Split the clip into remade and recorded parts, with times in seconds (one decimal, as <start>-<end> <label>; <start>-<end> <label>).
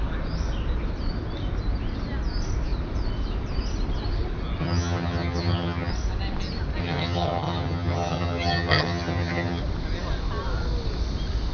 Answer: 0.0-4.6 recorded; 4.6-5.9 remade; 5.9-6.8 recorded; 6.8-9.6 remade; 9.6-11.5 recorded